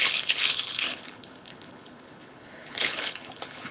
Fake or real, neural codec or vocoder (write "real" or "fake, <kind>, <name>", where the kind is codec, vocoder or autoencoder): fake, codec, HILCodec